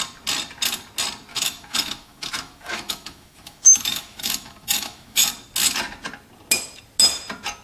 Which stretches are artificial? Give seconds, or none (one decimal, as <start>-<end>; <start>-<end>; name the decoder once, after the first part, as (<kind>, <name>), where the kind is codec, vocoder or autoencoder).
1.3-5.3 (autoencoder, DAC-VAE)